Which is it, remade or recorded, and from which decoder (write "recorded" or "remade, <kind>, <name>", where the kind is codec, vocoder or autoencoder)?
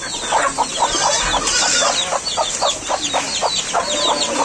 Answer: recorded